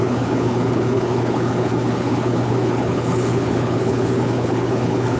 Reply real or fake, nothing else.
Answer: fake